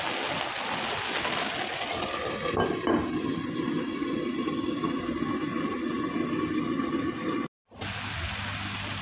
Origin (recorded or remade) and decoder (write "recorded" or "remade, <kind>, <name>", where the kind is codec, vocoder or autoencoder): recorded